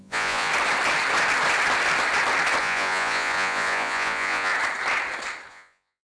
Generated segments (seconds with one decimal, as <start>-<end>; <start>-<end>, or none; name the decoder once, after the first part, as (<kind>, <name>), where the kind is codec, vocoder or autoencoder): 0.0-0.5 (vocoder, Vocos); 2.6-4.5; 5.5-6.1